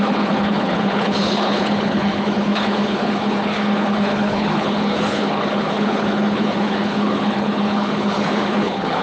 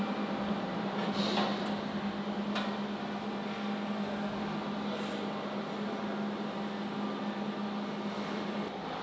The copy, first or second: first